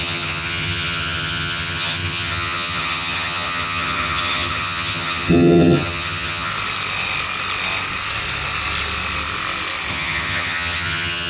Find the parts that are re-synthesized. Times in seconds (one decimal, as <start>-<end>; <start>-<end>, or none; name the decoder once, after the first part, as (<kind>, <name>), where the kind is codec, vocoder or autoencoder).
0.0-6.5 (vocoder, HiFi-GAN); 9.9-11.3